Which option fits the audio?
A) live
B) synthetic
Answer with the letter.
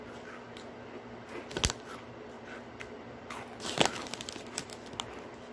A